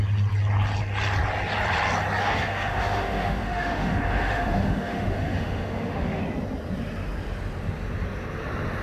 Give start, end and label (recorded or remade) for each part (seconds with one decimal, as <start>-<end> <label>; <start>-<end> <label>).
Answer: 0.0-2.2 recorded; 2.2-6.2 remade; 6.2-8.8 recorded